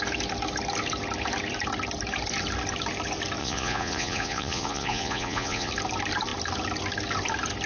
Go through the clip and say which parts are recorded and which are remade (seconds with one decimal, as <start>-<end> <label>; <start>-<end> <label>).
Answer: 0.0-3.4 recorded; 3.4-5.7 remade; 5.7-7.7 recorded